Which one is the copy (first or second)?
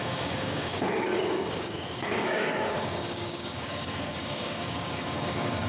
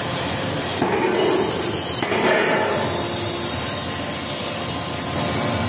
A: first